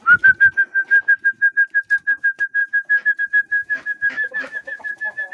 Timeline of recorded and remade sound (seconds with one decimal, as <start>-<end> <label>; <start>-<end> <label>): 0.0-3.6 recorded; 3.6-5.3 remade